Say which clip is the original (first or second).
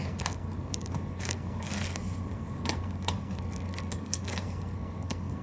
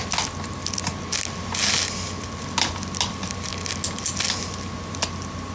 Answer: second